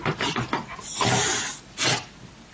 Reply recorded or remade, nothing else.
recorded